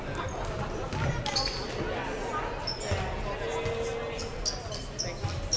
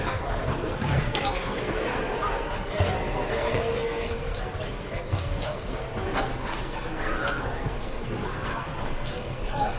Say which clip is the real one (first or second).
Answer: first